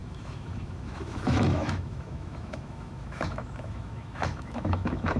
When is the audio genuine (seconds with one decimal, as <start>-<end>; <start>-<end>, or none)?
none